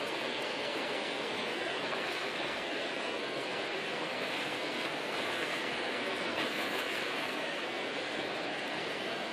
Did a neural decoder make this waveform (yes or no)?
yes